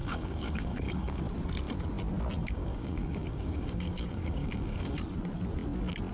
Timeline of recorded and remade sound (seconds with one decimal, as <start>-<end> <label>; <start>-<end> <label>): 0.0-1.2 remade; 1.2-2.4 recorded; 2.4-5.0 remade; 5.0-6.1 recorded